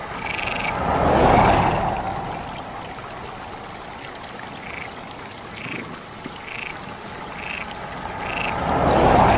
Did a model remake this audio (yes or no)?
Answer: no